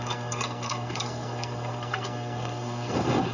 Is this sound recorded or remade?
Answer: remade